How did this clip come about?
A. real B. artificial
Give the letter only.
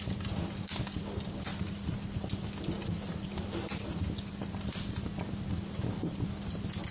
A